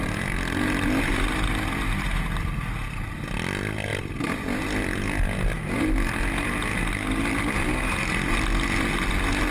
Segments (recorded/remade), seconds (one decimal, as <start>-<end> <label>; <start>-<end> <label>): 0.0-9.5 recorded